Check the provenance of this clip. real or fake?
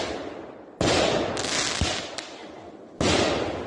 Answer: real